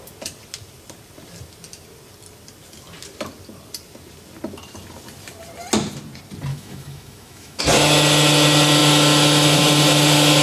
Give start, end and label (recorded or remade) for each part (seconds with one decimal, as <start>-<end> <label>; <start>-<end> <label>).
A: 0.0-6.5 recorded; 6.5-7.6 remade; 7.6-10.4 recorded